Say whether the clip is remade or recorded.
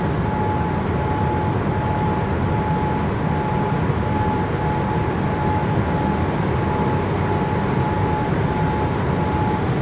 recorded